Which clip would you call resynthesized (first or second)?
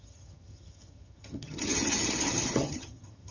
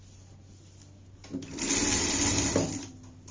first